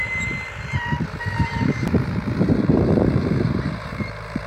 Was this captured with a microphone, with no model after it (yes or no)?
no